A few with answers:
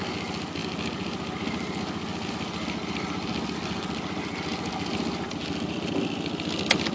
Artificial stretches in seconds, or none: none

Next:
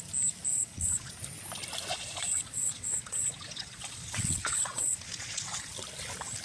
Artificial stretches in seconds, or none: 0.5-1.1 (vocoder, Vocos); 1.9-5.7

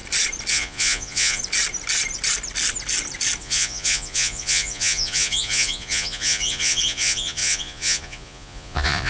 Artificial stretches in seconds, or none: 0.5-1.4 (vocoder, Vocos); 3.4-9.1

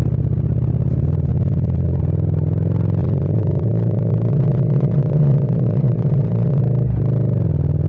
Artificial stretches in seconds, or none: 1.3-2.0 (vocoder, Vocos); 3.0-6.6